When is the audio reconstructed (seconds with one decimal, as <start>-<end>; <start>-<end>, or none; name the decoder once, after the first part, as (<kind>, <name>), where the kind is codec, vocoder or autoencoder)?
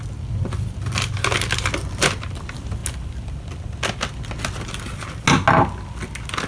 none